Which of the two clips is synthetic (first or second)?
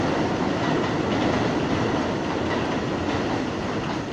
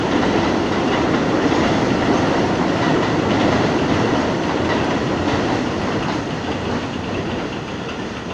second